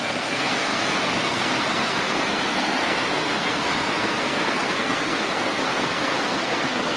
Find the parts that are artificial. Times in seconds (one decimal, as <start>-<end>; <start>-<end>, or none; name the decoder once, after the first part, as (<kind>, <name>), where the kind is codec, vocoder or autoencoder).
0.0-7.0 (codec, SNAC)